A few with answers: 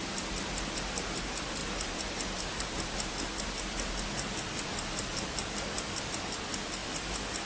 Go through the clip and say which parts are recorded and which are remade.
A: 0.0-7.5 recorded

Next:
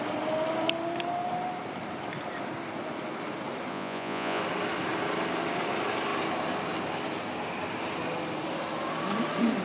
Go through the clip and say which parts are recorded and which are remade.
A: 0.0-3.7 recorded; 3.7-4.4 remade; 4.4-9.6 recorded

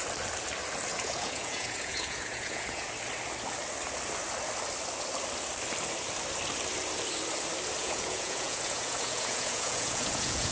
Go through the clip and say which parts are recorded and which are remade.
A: 0.0-0.9 recorded; 0.9-2.9 remade; 2.9-7.8 recorded; 7.8-10.5 remade

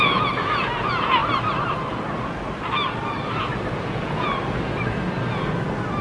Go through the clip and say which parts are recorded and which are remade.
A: 0.0-1.2 remade; 1.2-3.8 recorded; 3.8-4.3 remade; 4.3-6.0 recorded

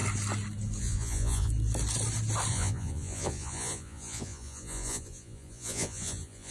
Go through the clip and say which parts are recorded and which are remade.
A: 0.0-0.8 recorded; 0.8-1.5 remade; 1.5-2.5 recorded; 2.5-6.5 remade

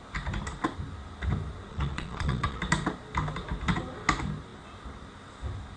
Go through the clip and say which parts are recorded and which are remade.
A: 0.0-1.7 recorded; 1.7-2.6 remade; 2.6-5.8 recorded

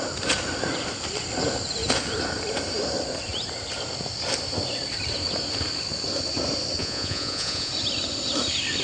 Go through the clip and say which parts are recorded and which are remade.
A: 0.0-6.8 recorded; 6.8-7.7 remade; 7.7-8.8 recorded

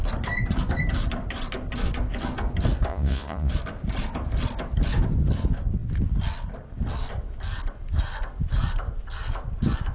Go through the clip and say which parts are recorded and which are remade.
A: 0.0-2.9 recorded; 2.9-3.5 remade; 3.5-9.9 recorded